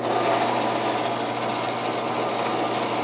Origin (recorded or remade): recorded